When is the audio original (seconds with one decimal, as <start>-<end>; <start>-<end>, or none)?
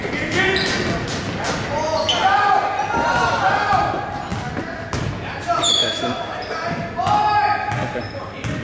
0.0-5.8; 6.3-8.6